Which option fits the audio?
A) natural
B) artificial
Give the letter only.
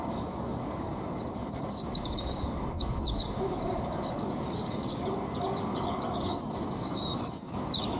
B